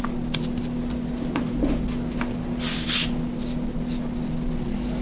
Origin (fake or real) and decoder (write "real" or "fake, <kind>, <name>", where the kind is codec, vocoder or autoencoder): real